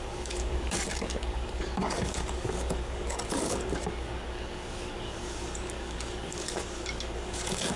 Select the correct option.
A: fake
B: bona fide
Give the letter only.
A